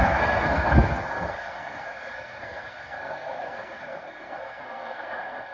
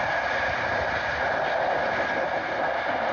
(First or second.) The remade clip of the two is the first